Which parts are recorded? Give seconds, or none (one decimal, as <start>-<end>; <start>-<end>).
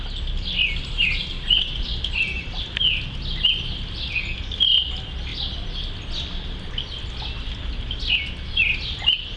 0.0-1.3; 2.0-9.4